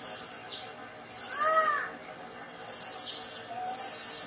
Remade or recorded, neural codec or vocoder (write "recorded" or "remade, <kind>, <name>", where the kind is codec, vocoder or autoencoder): recorded